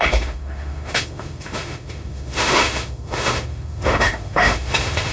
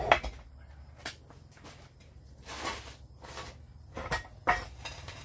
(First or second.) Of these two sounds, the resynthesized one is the first